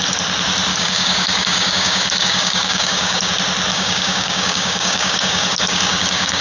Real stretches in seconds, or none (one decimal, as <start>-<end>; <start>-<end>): 0.0-0.7; 3.3-3.7